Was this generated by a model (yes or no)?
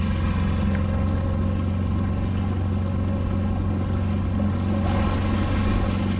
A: no